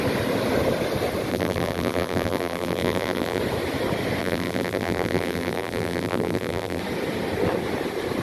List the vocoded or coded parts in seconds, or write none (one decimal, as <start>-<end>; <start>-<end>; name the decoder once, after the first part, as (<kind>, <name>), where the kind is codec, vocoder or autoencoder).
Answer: 1.3-3.4 (vocoder, BigVGAN v2); 4.2-6.8